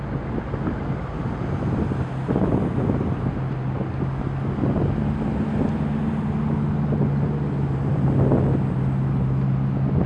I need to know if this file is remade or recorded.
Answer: recorded